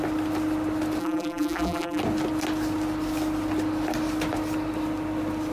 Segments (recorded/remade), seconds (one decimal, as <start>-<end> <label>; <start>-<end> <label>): 0.0-1.0 recorded; 1.0-2.0 remade; 2.0-5.5 recorded